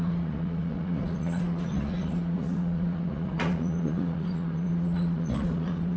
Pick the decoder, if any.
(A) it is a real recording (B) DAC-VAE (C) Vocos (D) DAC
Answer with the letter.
C